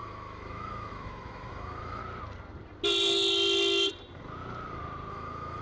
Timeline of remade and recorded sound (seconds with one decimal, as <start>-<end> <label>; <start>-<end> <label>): 0.0-2.0 remade; 2.0-5.1 recorded; 5.1-5.6 remade